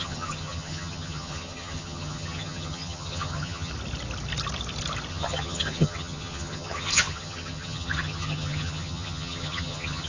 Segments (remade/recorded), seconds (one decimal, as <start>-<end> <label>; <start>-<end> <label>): 0.0-3.7 remade; 3.7-5.1 recorded; 5.1-10.1 remade